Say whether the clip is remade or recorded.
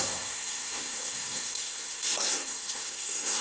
remade